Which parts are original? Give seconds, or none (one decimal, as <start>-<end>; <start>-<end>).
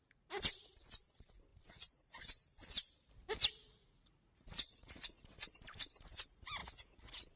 0.0-1.5; 2.2-3.8; 5.2-6.6